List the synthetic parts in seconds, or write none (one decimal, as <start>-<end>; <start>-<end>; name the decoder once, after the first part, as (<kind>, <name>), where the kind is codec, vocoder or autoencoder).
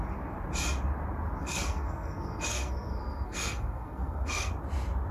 1.4-4.5 (codec, SNAC)